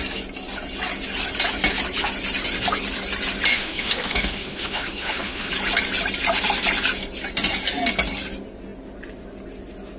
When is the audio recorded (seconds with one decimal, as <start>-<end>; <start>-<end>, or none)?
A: 0.0-3.5; 5.5-10.0